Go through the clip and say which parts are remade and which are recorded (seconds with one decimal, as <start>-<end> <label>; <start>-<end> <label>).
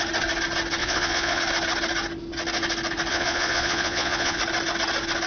0.0-0.8 recorded; 0.8-1.4 remade; 1.4-3.1 recorded; 3.1-4.4 remade; 4.4-5.3 recorded